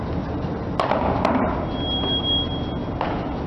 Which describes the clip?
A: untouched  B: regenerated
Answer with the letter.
A